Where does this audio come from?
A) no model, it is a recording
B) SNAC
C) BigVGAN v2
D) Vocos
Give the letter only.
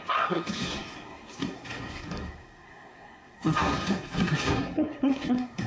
B